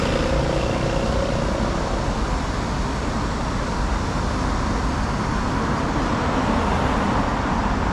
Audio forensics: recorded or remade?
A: recorded